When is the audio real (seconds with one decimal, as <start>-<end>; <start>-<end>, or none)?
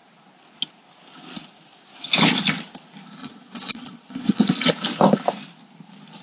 0.0-3.2; 4.7-6.2